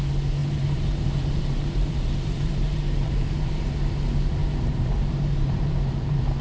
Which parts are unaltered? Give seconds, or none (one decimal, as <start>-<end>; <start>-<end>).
0.0-0.4; 3.6-4.4